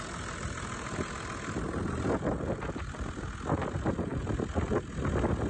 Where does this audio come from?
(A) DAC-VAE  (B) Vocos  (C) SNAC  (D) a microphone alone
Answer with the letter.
D